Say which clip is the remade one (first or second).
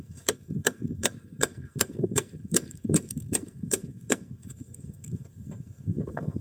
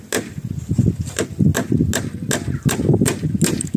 first